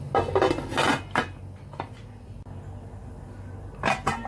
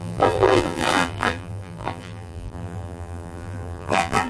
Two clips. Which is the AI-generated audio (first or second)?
second